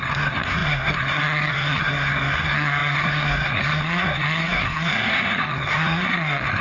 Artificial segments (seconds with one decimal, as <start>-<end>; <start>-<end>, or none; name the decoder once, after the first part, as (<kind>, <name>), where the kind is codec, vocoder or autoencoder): 0.0-6.6 (codec, SNAC)